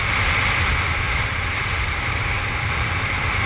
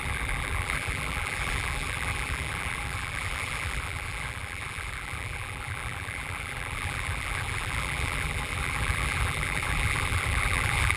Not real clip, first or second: second